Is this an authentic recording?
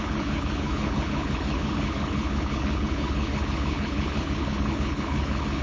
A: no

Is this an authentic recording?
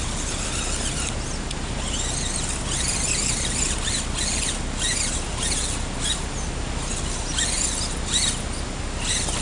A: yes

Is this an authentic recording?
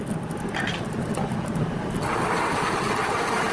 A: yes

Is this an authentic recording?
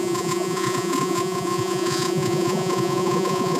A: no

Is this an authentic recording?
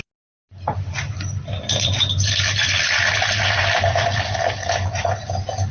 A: yes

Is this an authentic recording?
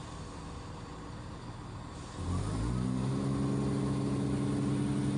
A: yes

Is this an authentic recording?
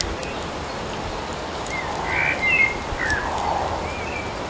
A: yes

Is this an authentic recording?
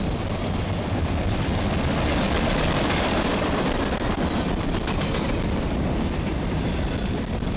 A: no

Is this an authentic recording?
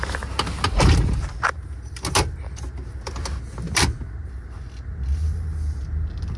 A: yes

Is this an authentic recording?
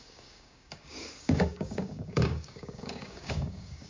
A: no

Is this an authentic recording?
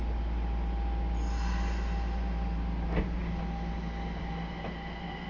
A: yes